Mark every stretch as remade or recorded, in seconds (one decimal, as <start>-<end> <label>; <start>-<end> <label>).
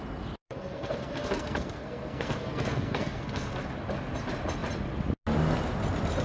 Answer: 0.0-0.4 recorded; 0.4-3.7 remade; 3.7-6.2 recorded